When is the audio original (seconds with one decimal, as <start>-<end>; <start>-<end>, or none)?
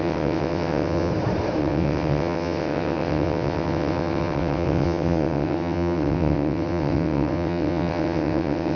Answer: 1.1-1.6